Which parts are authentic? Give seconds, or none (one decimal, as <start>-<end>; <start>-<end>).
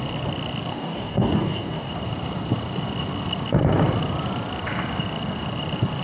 0.0-0.7; 1.9-6.0